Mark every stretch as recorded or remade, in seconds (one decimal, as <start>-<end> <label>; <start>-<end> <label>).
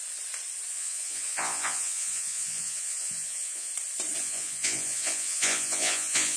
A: 0.0-0.7 recorded; 0.7-3.7 remade; 3.7-4.2 recorded; 4.2-6.4 remade